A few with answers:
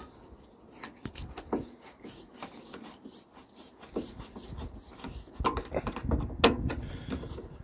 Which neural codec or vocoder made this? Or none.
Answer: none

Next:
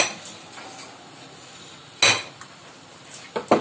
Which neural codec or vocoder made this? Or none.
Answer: none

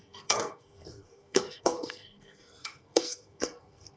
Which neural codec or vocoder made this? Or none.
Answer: codec, SNAC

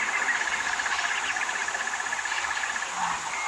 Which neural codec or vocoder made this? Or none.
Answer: none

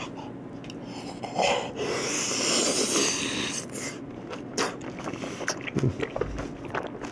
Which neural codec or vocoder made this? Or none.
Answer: none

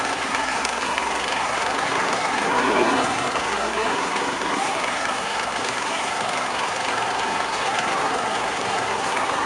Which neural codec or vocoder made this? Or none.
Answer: codec, SNAC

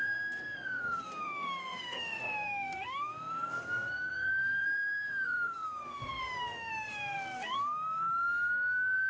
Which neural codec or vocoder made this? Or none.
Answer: codec, SNAC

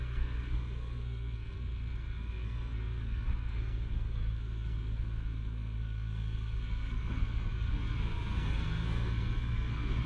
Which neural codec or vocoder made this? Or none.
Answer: codec, SNAC